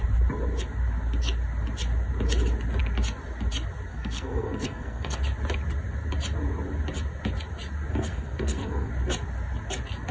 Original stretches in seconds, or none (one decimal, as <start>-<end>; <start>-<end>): 0.0-3.9; 5.2-7.9; 8.9-10.1